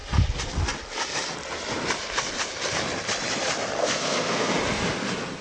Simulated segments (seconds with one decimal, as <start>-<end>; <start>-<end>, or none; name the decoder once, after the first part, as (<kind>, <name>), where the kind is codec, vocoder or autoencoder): 3.8-4.5 (codec, SNAC)